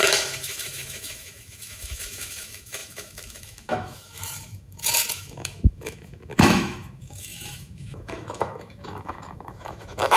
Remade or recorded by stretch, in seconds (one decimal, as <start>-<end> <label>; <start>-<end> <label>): 0.0-10.2 remade